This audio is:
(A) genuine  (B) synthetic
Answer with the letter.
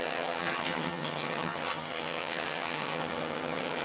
B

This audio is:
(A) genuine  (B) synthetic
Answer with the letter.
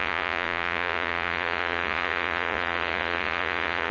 B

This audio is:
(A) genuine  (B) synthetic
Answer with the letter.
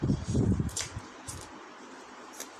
B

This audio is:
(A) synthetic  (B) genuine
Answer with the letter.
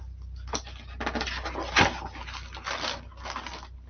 B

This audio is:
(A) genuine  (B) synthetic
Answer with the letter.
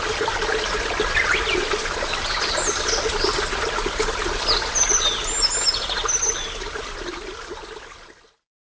A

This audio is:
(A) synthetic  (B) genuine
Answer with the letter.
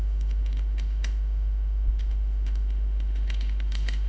A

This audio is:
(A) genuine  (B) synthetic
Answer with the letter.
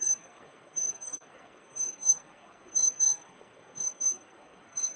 B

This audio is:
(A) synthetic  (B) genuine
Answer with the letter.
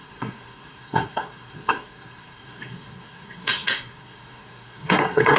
A